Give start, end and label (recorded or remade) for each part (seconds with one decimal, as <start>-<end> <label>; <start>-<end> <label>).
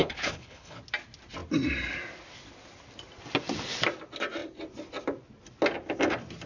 0.0-0.8 remade; 0.8-6.5 recorded